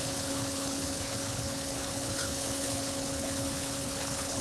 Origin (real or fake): fake